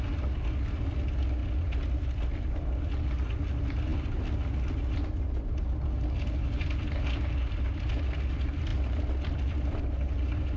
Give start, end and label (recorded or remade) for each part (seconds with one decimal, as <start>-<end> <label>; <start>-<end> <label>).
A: 0.0-8.7 recorded; 8.7-9.8 remade; 9.8-10.6 recorded